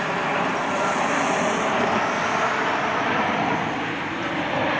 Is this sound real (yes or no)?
yes